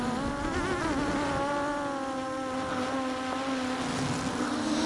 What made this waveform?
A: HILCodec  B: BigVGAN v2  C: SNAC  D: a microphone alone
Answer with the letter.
D